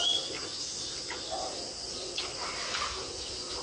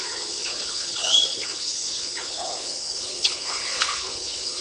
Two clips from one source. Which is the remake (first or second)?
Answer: second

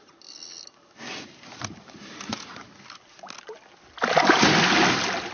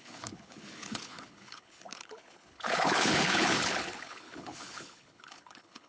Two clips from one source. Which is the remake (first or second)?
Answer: second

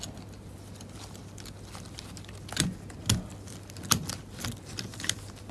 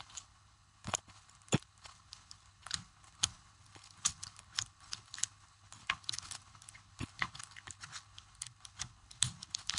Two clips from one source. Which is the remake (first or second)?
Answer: second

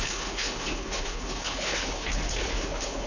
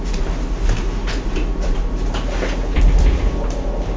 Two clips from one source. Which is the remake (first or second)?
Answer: first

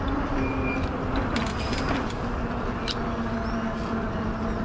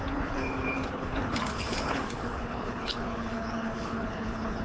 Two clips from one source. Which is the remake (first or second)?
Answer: second